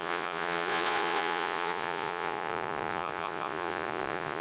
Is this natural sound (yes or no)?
no